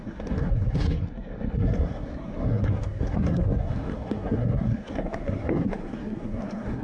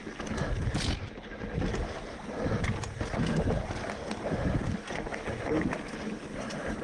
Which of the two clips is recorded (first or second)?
second